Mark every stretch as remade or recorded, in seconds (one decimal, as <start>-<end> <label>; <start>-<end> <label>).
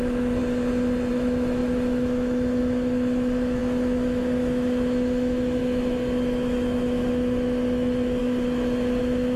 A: 0.0-0.4 remade; 0.4-1.1 recorded; 1.1-9.4 remade